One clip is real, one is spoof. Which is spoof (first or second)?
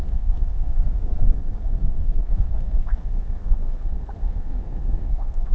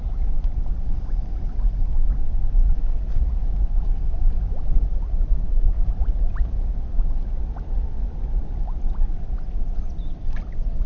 first